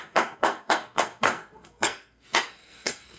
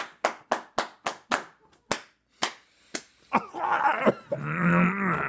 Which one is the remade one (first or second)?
first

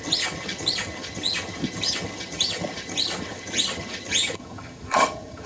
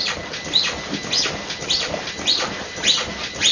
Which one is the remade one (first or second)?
first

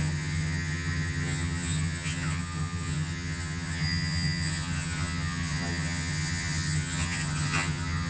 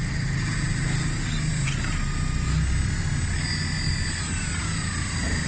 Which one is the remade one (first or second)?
first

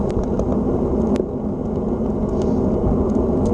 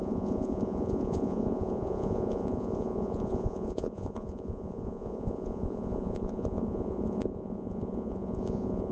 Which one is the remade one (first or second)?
second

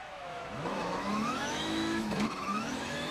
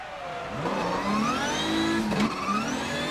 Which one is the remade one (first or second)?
first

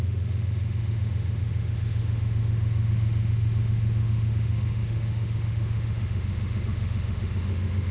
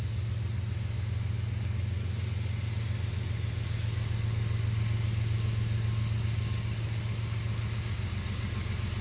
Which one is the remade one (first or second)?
first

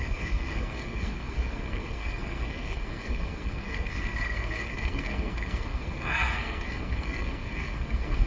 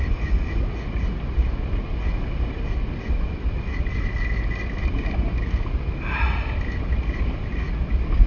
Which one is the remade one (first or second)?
first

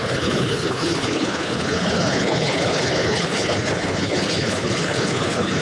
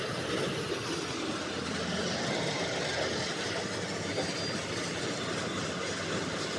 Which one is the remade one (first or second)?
first